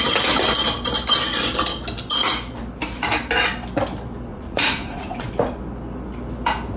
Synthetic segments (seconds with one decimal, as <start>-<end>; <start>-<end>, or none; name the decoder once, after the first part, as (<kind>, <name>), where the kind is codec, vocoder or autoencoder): 4.3-5.3 (vocoder, Vocos)

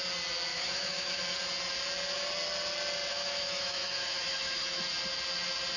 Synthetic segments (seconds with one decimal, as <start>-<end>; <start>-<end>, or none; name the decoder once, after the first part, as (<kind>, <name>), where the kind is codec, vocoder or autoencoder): 0.5-1.2 (autoencoder, DAC-VAE); 3.1-4.8

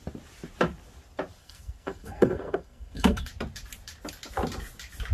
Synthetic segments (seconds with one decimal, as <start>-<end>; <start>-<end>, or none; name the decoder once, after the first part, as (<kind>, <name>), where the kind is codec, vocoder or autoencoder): 1.4-3.3 (codec, SNAC)

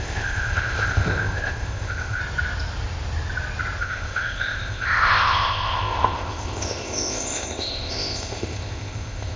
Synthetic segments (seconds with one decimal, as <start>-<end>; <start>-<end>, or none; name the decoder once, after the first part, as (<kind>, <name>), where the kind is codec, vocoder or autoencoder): 0.0-2.2 (codec, ZipCodec); 3.8-9.4

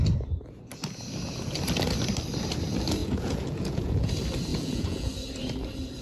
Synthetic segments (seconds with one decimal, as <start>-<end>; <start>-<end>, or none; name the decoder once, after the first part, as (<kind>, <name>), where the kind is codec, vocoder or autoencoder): 3.0-4.1 (vocoder, Vocos); 4.5-5.1

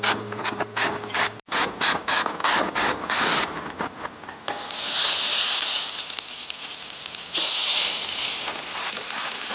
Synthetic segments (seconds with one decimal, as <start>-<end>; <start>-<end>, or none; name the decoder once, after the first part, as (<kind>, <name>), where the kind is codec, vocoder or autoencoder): none

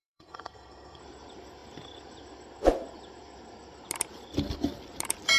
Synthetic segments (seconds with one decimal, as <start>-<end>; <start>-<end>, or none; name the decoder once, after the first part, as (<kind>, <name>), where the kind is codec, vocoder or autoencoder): 0.0-1.0 (codec, SNAC)

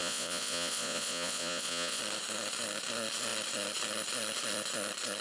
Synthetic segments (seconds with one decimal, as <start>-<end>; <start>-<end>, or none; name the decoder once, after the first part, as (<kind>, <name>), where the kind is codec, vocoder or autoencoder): 0.0-2.0 (vocoder, Vocos)